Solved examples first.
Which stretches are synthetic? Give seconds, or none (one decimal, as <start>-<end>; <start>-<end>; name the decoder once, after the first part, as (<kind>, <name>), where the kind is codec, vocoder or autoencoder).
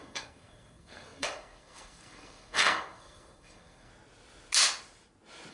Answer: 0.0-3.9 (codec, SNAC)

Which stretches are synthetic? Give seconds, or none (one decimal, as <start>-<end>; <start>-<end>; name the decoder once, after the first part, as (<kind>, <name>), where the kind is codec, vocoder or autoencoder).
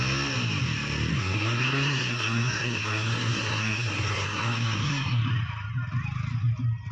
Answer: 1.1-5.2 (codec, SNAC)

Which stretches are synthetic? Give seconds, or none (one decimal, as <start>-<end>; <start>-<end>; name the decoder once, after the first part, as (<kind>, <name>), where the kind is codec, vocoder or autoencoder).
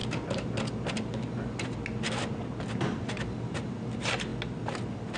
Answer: none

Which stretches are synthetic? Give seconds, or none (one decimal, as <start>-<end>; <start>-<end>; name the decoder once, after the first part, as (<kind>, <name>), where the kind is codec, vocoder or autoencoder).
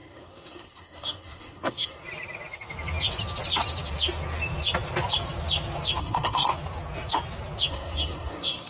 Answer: 0.0-2.0 (codec, SNAC); 6.0-6.5; 7.7-8.7